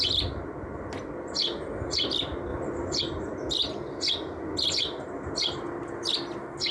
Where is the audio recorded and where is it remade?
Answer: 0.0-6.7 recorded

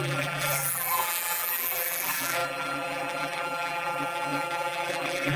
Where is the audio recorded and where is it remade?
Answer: 0.0-5.4 remade

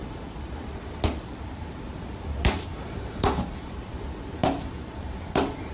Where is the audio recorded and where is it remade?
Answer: 0.0-2.7 recorded; 2.7-3.8 remade; 3.8-4.4 recorded; 4.4-5.2 remade; 5.2-5.7 recorded

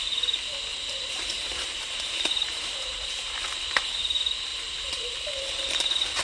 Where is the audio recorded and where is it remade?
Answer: 0.0-0.7 recorded; 0.7-3.9 remade; 3.9-4.5 recorded; 4.5-5.0 remade; 5.0-6.2 recorded

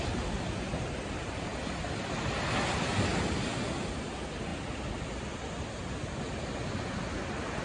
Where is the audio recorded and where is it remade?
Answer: 0.0-7.6 recorded

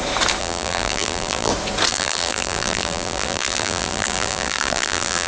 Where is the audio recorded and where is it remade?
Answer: 0.0-0.4 recorded; 0.4-1.5 remade; 1.5-1.9 recorded; 1.9-5.3 remade

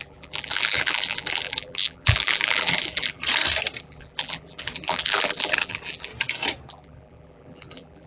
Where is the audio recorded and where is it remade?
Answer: 0.0-3.2 remade; 3.2-3.8 recorded; 3.8-6.1 remade; 6.1-6.7 recorded; 6.7-8.1 remade

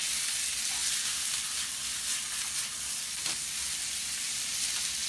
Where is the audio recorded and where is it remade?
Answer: 0.0-5.1 recorded